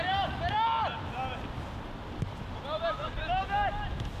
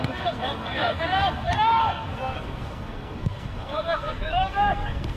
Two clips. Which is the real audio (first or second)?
first